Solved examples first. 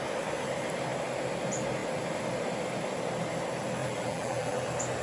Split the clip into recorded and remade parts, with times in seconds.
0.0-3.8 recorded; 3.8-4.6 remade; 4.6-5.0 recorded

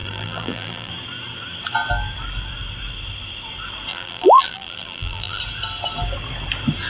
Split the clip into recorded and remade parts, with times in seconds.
0.0-0.9 remade; 0.9-3.9 recorded; 3.9-5.4 remade; 5.4-6.9 recorded

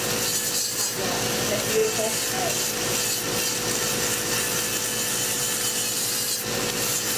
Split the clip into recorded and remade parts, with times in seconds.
0.0-7.2 recorded

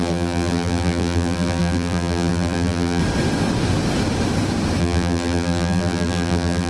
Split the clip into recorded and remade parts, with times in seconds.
0.0-3.0 remade; 3.0-4.8 recorded; 4.8-6.7 remade